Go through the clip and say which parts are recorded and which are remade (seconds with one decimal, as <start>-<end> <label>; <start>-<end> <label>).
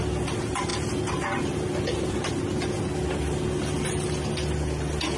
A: 0.0-5.2 recorded